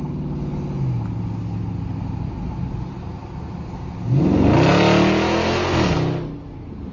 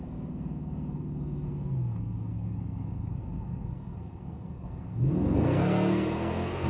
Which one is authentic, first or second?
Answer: first